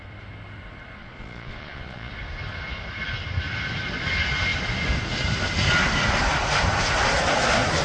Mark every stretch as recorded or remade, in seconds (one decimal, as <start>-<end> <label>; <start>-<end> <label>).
0.0-1.0 recorded; 1.0-2.1 remade; 2.1-7.8 recorded